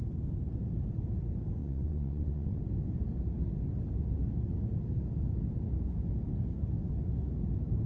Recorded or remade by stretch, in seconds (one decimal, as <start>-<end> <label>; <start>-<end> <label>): 0.0-1.6 recorded; 1.6-2.6 remade; 2.6-7.9 recorded